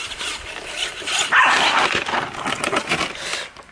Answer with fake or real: real